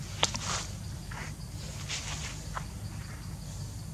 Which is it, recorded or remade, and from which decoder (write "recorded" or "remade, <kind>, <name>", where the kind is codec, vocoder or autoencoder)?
recorded